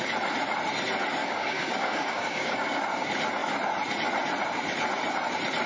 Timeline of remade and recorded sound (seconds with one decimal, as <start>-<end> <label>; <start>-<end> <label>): 0.0-1.2 recorded; 1.2-2.8 remade; 2.8-5.7 recorded